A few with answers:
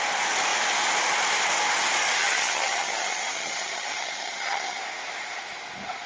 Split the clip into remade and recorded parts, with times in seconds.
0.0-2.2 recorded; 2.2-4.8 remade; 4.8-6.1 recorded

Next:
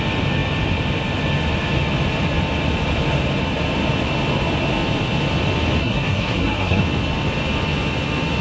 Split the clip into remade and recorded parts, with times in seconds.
0.0-5.8 recorded; 5.8-6.8 remade; 6.8-8.4 recorded